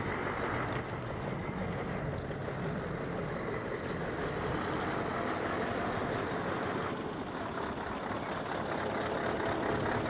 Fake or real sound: real